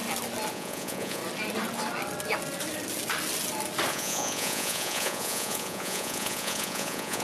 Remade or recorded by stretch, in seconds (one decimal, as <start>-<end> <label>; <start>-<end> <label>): 0.0-0.5 recorded; 0.5-1.2 remade; 1.2-3.9 recorded; 3.9-7.2 remade